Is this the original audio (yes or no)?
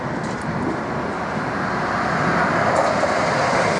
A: yes